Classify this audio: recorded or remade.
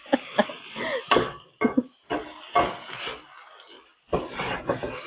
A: recorded